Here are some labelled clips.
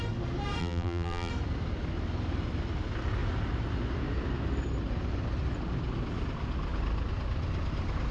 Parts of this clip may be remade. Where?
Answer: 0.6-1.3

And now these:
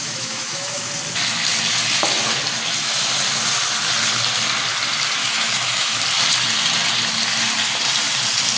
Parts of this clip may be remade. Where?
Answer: 0.0-0.9; 5.2-6.0

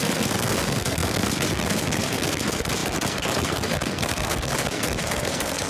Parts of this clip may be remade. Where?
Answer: 0.0-5.7

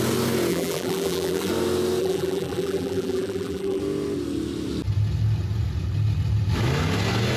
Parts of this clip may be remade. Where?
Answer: 0.5-1.5; 2.0-3.8

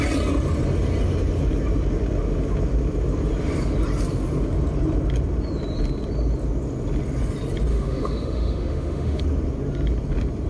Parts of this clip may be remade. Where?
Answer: 7.7-9.2